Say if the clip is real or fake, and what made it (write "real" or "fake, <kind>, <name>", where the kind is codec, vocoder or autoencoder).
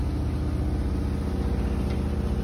real